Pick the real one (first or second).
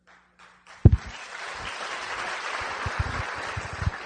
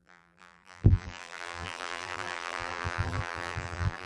first